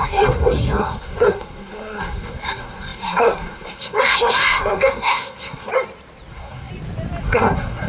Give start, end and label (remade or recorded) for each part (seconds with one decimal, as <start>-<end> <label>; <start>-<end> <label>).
0.0-5.7 remade; 5.7-6.3 recorded; 6.3-6.7 remade; 6.7-7.2 recorded; 7.2-7.9 remade